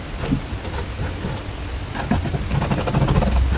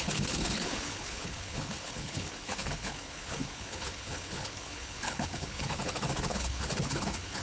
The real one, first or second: first